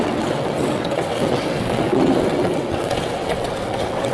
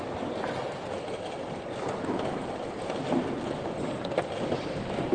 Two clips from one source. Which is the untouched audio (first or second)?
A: second